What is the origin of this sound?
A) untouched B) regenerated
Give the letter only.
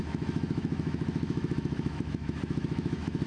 B